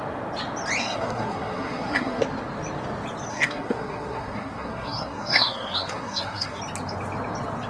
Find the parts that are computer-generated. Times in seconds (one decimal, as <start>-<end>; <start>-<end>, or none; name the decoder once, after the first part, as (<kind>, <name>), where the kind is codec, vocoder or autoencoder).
0.8-2.2 (codec, SNAC); 3.3-6.6

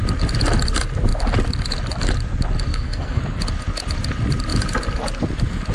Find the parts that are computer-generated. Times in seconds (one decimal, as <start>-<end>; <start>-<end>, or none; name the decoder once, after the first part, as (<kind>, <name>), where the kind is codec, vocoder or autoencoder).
2.7-3.2 (codec, SNAC)

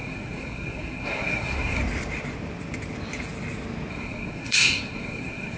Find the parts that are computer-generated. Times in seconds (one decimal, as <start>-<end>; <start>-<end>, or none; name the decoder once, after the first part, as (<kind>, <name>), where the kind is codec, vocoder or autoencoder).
0.0-1.8 (codec, SNAC); 3.9-5.6

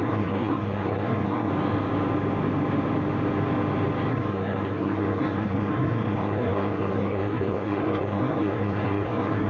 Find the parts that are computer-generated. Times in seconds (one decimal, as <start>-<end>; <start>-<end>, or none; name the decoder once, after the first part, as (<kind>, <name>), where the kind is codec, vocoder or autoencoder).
0.0-1.5 (codec, SNAC); 4.1-9.5